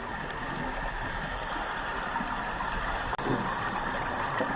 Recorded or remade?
recorded